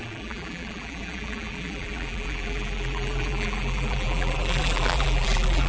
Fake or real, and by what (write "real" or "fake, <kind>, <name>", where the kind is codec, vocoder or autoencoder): fake, vocoder, BigVGAN v2